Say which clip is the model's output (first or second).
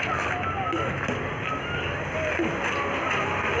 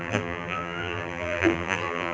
second